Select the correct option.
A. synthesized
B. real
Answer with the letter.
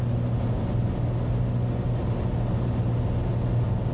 B